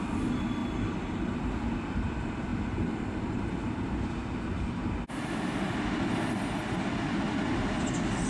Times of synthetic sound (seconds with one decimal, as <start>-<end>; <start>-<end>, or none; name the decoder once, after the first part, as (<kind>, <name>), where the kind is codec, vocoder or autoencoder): none